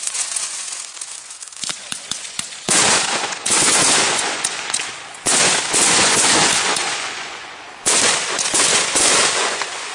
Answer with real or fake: fake